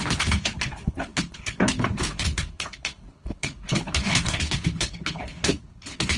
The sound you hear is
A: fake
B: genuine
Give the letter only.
A